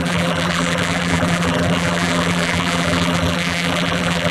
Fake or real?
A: fake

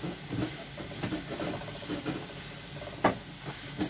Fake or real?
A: real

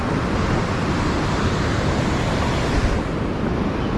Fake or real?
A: real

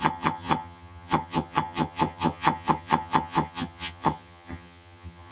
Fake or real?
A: fake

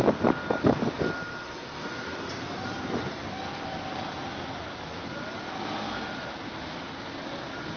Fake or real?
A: real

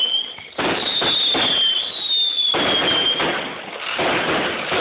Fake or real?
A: real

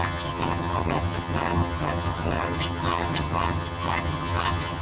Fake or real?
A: fake